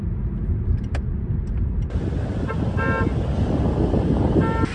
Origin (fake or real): real